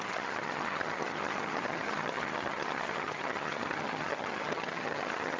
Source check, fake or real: fake